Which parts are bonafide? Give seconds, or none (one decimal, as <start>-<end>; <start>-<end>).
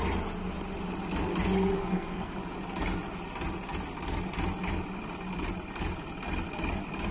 0.0-1.8; 2.4-7.1